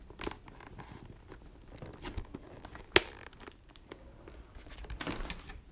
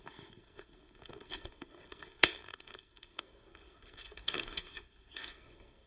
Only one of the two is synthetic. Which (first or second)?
second